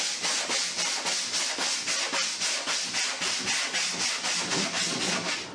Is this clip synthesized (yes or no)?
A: no